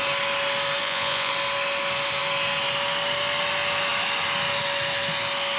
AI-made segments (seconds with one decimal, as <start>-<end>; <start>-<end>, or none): 0.8-1.3